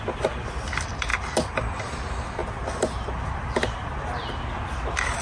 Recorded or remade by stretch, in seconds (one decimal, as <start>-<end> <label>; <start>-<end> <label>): 0.0-1.1 recorded; 1.1-2.0 remade; 2.0-2.4 recorded; 2.4-3.1 remade; 3.1-5.2 recorded

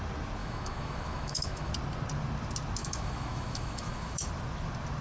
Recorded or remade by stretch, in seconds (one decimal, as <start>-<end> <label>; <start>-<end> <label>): 0.0-0.4 recorded; 0.4-1.7 remade; 1.7-2.8 recorded; 2.8-4.3 remade; 4.3-5.0 recorded

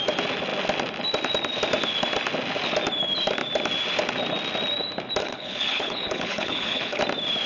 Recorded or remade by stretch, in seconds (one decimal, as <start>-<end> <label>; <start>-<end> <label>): 0.0-5.2 recorded; 5.2-7.0 remade; 7.0-7.5 recorded

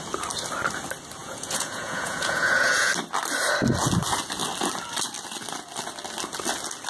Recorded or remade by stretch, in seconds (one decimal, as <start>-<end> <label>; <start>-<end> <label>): 0.0-1.2 recorded; 1.2-2.9 remade; 2.9-6.9 recorded

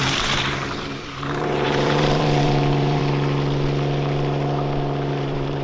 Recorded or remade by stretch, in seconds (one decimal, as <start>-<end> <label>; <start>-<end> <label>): 0.0-3.0 remade; 3.0-5.1 recorded; 5.1-5.6 remade

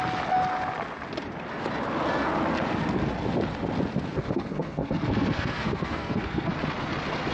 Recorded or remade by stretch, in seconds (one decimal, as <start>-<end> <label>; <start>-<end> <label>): 0.0-4.1 recorded; 4.1-6.5 remade; 6.5-7.3 recorded

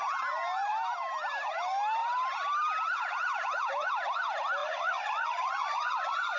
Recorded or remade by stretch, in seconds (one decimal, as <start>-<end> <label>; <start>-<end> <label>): 0.0-4.6 recorded; 4.6-6.4 remade

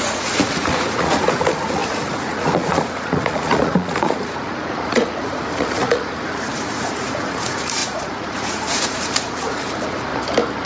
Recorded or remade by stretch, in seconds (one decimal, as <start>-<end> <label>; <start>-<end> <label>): 0.0-10.1 remade; 10.1-10.7 recorded